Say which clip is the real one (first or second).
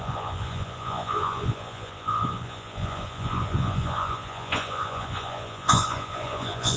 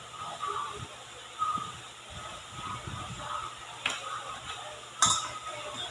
second